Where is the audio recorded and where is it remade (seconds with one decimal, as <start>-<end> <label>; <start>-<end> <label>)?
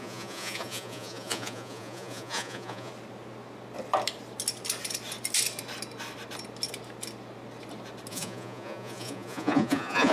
0.0-2.9 remade; 2.9-8.1 recorded; 8.1-10.1 remade